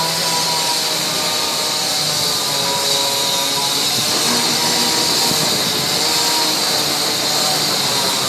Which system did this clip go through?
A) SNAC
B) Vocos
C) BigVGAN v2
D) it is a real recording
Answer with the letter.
D